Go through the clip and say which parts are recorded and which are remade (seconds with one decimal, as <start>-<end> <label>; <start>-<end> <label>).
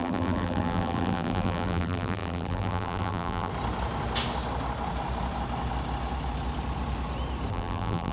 0.0-3.5 remade; 3.5-7.5 recorded; 7.5-8.1 remade